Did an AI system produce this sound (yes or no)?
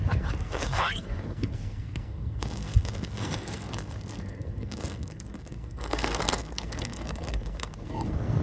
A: yes